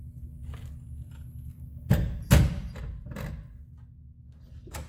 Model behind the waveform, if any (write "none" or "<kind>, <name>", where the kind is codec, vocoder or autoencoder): none